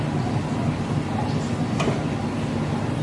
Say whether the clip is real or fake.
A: real